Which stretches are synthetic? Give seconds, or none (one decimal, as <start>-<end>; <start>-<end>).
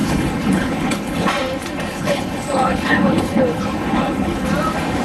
0.0-1.3; 1.9-4.5